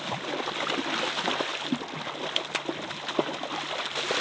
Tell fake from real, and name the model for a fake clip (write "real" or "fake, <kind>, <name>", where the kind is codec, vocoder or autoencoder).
real